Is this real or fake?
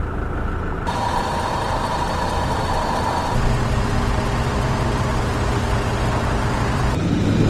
real